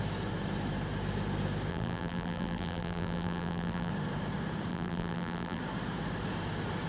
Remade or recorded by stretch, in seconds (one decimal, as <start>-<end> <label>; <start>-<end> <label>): 0.0-1.7 recorded; 1.7-3.9 remade; 3.9-4.7 recorded; 4.7-5.6 remade; 5.6-6.9 recorded